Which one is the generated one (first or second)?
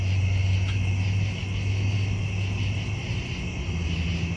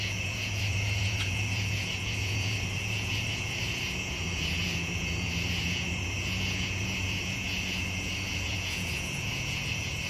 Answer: second